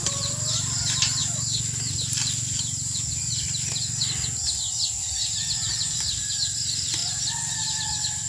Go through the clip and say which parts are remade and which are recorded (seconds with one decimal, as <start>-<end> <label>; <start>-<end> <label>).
0.0-8.3 recorded